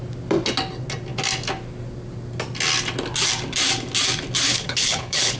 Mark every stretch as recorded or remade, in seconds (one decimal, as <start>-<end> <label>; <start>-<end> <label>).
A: 0.0-4.5 recorded; 4.5-5.4 remade

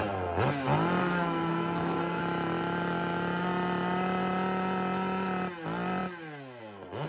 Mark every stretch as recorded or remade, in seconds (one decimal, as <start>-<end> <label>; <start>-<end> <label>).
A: 0.0-1.0 recorded; 1.0-2.2 remade; 2.2-7.1 recorded

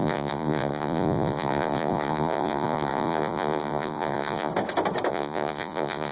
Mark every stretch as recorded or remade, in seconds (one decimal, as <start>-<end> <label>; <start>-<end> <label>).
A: 0.0-4.5 remade; 4.5-5.1 recorded; 5.1-6.1 remade

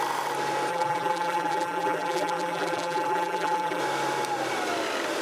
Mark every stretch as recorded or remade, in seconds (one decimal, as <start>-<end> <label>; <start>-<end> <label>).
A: 0.0-0.7 recorded; 0.7-3.8 remade; 3.8-5.2 recorded

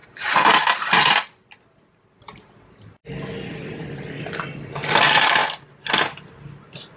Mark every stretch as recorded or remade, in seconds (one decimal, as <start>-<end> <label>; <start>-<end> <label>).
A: 0.0-7.0 recorded

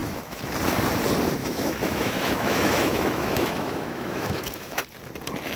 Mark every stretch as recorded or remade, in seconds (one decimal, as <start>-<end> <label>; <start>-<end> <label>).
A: 0.0-0.5 remade; 0.5-1.4 recorded; 1.4-4.8 remade; 4.8-5.6 recorded

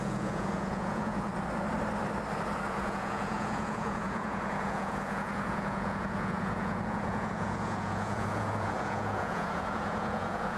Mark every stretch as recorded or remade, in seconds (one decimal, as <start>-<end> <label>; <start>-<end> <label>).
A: 0.0-1.3 remade; 1.3-2.7 recorded; 2.7-10.6 remade